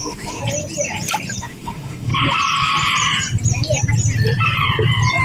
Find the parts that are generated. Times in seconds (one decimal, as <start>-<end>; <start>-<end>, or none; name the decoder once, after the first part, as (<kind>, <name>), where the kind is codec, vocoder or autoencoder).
0.0-0.4 (autoencoder, DAC-VAE); 1.4-2.1